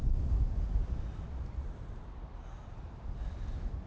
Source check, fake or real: real